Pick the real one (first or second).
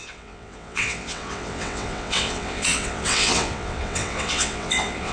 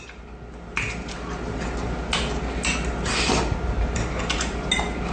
second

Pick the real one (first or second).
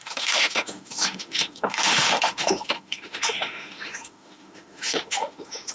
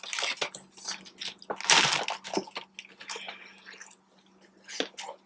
second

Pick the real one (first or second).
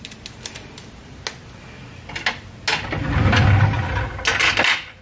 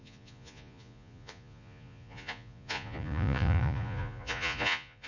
first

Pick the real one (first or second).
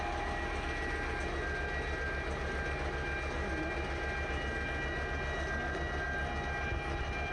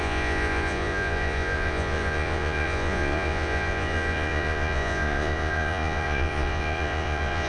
first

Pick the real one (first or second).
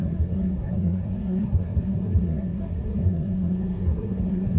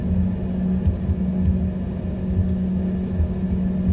second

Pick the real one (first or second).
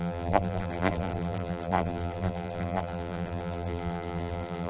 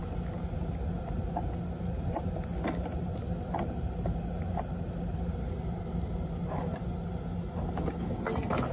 second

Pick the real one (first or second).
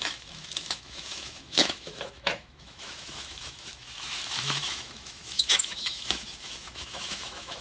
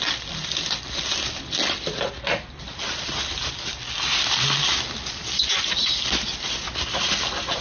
second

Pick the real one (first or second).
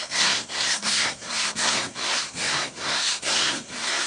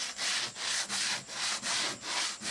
second